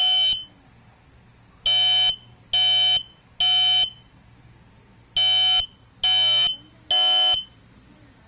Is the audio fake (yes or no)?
no